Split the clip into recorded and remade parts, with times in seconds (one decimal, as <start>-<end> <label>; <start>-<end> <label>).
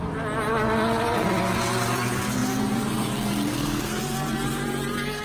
0.0-3.5 recorded; 3.5-4.0 remade; 4.0-5.2 recorded